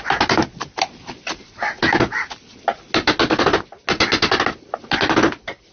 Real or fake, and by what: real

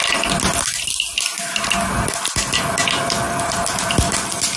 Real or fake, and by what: real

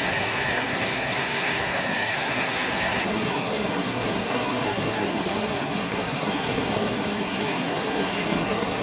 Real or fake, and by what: fake, codec, SNAC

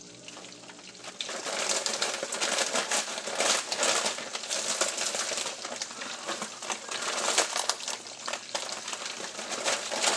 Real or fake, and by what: real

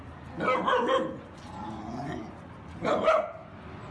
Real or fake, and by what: real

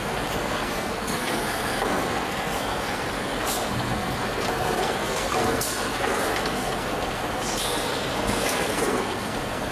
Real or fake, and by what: fake, codec, SNAC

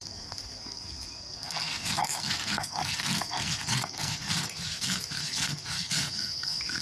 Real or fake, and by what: fake, codec, SNAC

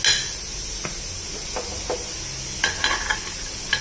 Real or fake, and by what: real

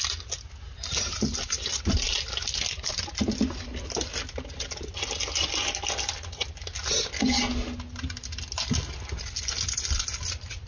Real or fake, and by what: real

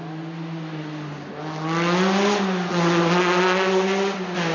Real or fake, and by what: real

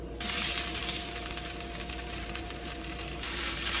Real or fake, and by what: fake, vocoder, BigVGAN v2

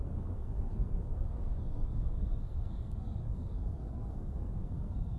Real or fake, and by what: fake, codec, SNAC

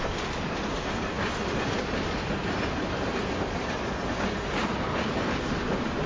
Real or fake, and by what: real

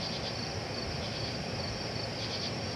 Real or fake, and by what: real